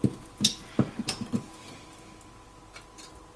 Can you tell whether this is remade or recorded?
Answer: recorded